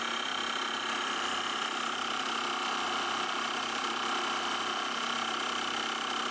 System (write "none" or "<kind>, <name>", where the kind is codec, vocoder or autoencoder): none